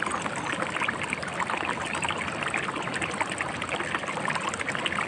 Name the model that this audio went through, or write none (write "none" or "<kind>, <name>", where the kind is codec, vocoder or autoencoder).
none